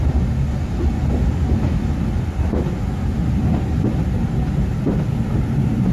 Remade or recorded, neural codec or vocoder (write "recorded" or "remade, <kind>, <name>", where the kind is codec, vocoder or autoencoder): recorded